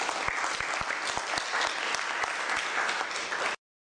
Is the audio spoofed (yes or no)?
no